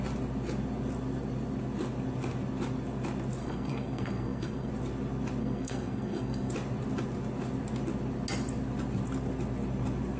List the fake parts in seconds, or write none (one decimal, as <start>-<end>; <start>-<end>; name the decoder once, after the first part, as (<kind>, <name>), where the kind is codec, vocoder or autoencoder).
3.4-4.7 (codec, SNAC); 5.4-6.5